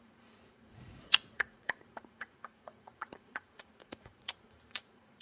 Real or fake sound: fake